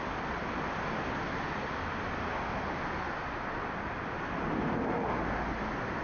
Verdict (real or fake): real